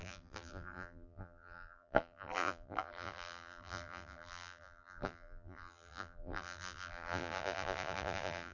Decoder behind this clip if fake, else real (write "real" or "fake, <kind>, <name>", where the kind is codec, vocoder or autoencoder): fake, vocoder, BigVGAN v2